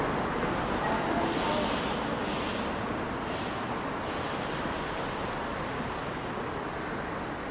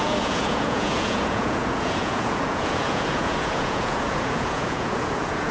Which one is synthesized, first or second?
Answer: second